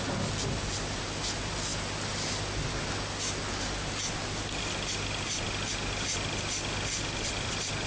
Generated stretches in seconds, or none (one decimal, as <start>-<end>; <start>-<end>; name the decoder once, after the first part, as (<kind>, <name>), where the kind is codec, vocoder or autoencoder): none